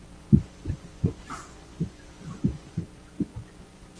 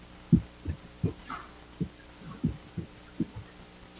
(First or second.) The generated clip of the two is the first